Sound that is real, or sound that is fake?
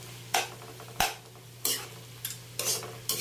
real